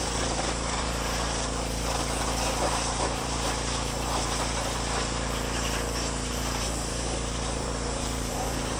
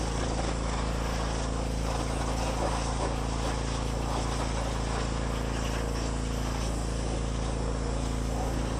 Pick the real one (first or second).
second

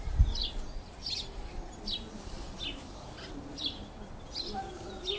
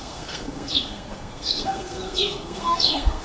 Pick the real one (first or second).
first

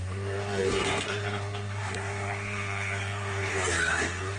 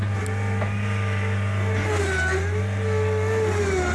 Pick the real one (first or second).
second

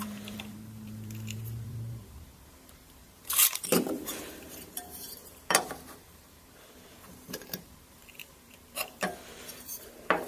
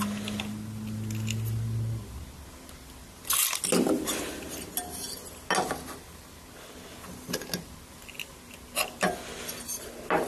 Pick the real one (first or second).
second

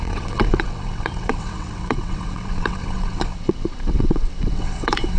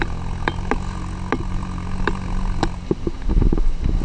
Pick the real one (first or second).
second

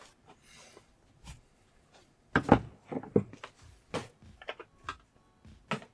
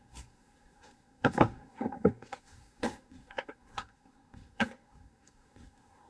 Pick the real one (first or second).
first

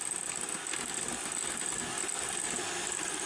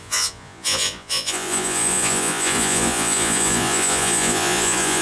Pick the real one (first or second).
first